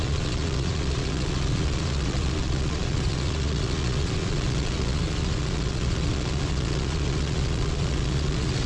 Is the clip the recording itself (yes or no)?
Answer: no